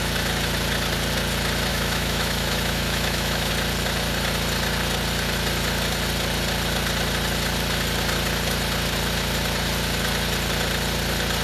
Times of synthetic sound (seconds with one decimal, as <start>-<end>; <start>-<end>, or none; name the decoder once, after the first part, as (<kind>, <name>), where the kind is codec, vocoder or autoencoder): 1.7-3.5 (autoencoder, DAC-VAE)